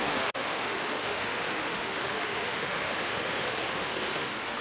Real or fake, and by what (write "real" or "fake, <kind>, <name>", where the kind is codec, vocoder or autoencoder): fake, autoencoder, DAC-VAE